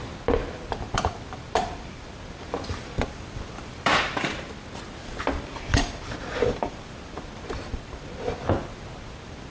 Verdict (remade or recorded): remade